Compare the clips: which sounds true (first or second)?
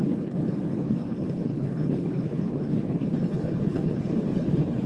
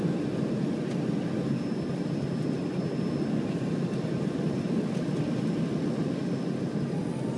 second